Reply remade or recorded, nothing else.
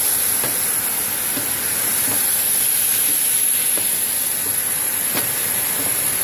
recorded